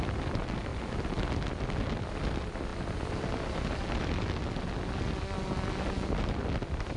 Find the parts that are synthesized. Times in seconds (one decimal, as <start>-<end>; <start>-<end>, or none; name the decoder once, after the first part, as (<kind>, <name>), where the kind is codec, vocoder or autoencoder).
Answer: none